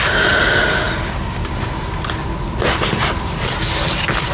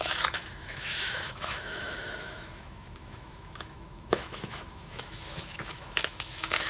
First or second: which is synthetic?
second